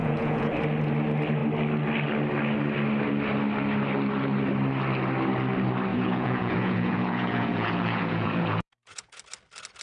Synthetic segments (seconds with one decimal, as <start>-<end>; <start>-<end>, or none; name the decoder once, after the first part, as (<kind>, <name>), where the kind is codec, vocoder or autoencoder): 0.0-0.5 (vocoder, Vocos); 5.9-9.2